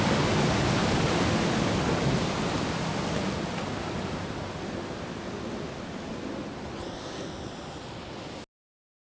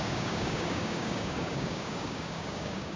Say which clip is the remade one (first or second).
second